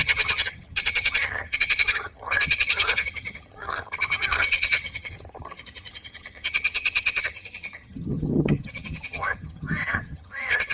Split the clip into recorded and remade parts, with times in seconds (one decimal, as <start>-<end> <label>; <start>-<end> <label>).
0.0-10.7 remade